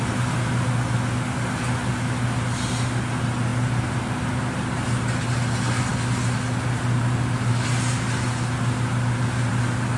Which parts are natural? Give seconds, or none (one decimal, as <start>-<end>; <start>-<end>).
0.0-10.0